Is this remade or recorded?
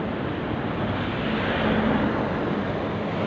recorded